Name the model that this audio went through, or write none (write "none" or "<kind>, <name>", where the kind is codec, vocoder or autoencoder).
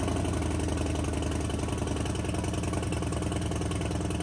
none